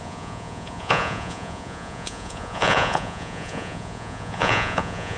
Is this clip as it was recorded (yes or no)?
no